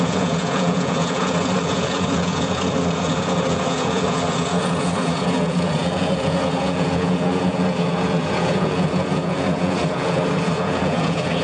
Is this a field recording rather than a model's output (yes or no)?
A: no